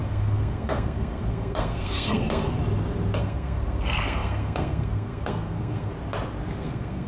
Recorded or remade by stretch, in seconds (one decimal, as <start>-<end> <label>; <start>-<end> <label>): 0.0-2.6 remade; 2.6-3.2 recorded; 3.2-5.9 remade; 5.9-6.6 recorded; 6.6-7.1 remade